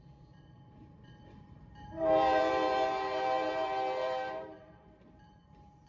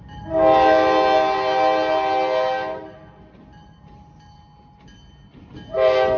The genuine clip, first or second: second